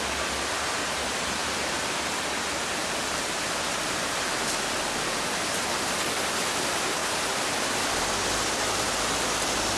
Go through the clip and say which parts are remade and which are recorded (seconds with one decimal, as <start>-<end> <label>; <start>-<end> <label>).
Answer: 0.0-9.8 recorded